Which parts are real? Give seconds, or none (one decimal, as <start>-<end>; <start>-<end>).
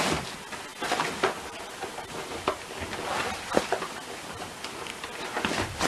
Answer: 0.0-5.9